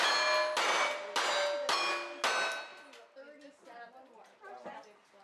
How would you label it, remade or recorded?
recorded